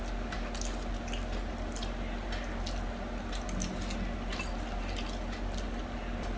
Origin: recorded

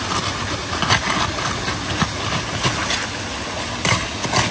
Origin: recorded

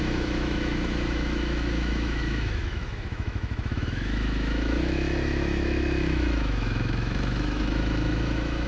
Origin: remade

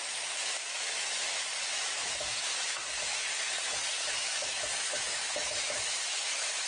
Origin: remade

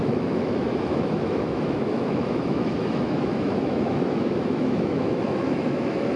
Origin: remade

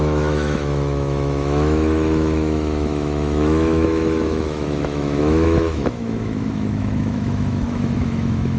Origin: remade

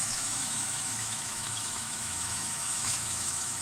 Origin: remade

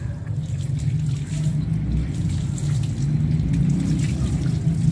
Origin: recorded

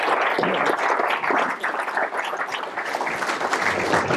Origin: recorded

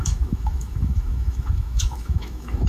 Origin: remade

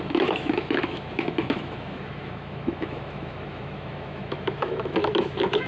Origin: remade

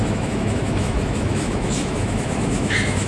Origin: remade